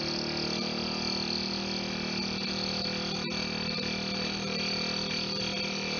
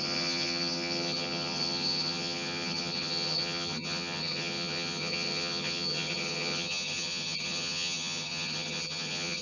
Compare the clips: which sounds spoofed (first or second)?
second